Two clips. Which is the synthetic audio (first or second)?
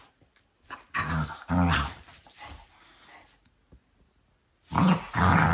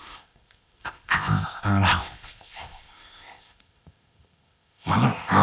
second